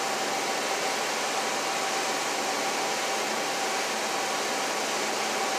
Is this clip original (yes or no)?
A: yes